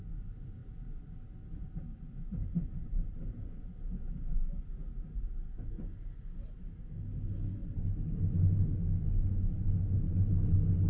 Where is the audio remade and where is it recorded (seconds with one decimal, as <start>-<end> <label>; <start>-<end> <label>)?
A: 0.0-0.6 recorded; 0.6-4.1 remade; 4.1-4.9 recorded; 4.9-5.7 remade; 5.7-10.9 recorded

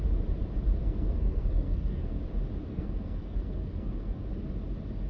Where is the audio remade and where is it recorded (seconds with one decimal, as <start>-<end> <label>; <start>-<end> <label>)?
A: 0.0-0.8 recorded; 0.8-2.2 remade; 2.2-2.7 recorded; 2.7-4.3 remade; 4.3-5.1 recorded

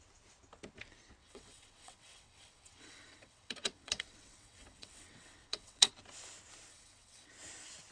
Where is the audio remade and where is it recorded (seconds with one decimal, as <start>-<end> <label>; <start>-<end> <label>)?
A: 0.0-1.2 recorded; 1.2-5.9 remade; 5.9-6.7 recorded; 6.7-7.3 remade; 7.3-7.9 recorded

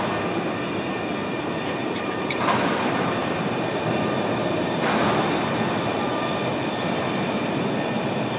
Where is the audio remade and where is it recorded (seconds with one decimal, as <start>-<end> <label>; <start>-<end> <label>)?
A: 0.0-1.8 recorded; 1.8-4.9 remade; 4.9-8.4 recorded

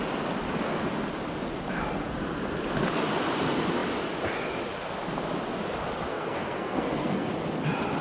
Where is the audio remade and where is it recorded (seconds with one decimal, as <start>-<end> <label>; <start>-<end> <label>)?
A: 0.0-6.1 recorded; 6.1-7.3 remade; 7.3-8.0 recorded